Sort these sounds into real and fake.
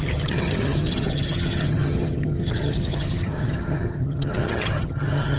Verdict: fake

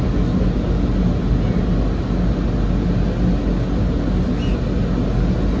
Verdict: real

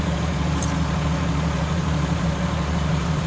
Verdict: fake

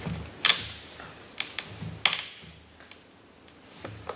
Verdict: real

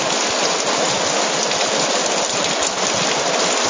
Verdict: real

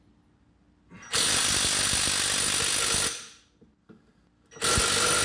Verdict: real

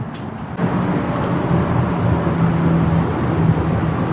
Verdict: real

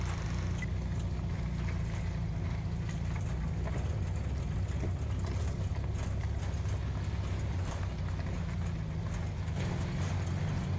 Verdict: real